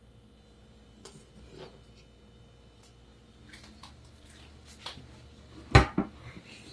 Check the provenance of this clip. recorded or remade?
recorded